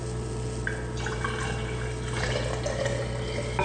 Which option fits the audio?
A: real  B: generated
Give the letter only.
A